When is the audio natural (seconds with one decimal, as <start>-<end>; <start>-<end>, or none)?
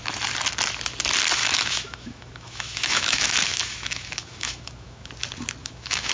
0.0-1.4; 5.1-5.6